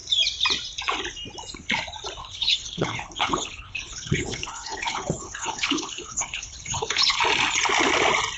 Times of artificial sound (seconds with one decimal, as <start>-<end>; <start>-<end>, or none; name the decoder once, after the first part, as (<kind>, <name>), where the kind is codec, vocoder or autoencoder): 2.2-7.2 (codec, HILCodec)